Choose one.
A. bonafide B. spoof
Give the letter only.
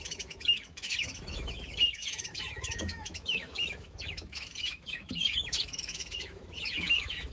B